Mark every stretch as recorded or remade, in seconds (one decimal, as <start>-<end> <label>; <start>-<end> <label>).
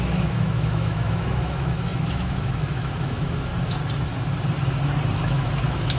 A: 0.0-3.5 remade; 3.5-5.2 recorded; 5.2-6.0 remade